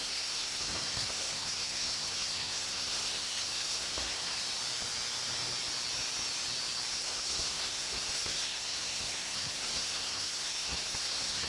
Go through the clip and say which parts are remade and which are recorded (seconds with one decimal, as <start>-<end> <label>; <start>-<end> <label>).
0.0-4.4 remade; 4.4-6.9 recorded; 6.9-11.5 remade